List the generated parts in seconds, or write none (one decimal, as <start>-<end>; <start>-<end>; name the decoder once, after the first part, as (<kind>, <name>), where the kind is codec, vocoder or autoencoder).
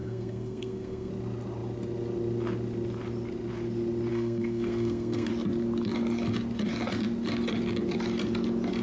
0.0-1.1 (codec, SNAC); 4.1-5.3